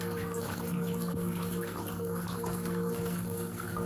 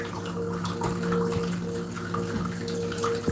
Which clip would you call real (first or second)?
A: second